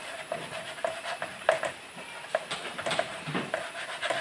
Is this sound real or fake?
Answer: real